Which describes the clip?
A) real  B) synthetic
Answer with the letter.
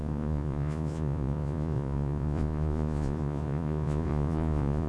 B